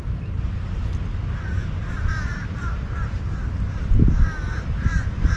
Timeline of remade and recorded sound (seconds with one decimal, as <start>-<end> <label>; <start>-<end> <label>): 0.0-5.4 recorded